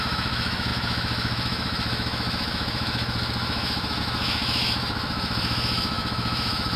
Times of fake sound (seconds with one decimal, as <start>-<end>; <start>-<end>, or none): 0.0-6.8